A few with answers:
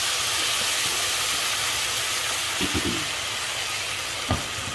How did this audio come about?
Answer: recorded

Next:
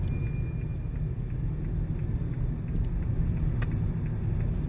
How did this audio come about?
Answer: recorded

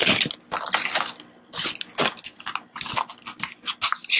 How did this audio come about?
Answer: recorded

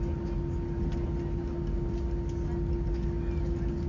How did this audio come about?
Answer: recorded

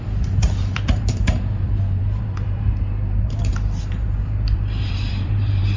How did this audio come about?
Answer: remade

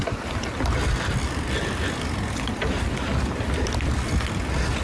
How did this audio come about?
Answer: recorded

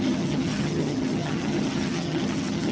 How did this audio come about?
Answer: remade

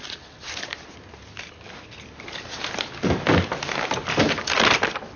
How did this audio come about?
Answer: recorded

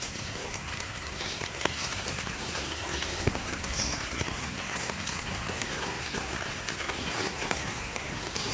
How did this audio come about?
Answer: remade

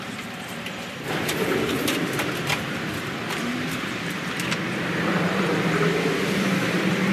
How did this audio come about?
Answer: remade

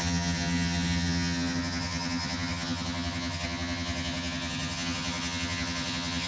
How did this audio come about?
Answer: remade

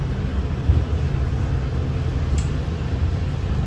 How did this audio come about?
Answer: recorded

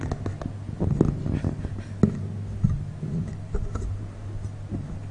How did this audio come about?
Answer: recorded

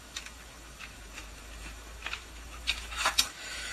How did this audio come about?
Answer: remade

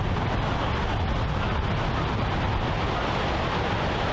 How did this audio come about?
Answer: recorded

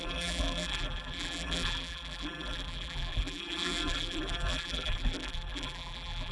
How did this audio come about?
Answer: remade